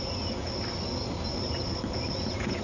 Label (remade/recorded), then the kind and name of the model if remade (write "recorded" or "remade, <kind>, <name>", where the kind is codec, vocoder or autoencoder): recorded